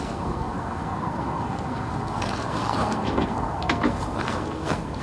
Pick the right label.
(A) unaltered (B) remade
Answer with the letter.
B